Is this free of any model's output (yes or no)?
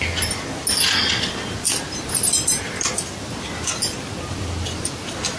yes